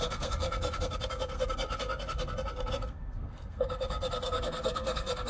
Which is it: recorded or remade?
remade